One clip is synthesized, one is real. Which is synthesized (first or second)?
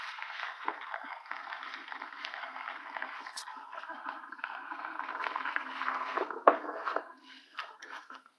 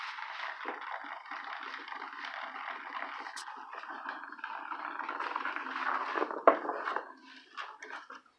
first